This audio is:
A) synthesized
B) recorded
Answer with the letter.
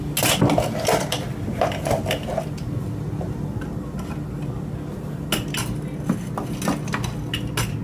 B